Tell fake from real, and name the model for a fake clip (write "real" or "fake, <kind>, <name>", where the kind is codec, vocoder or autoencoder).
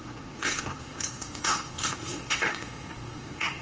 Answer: fake, codec, SNAC